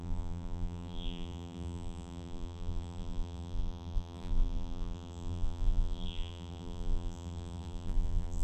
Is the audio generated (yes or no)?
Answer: yes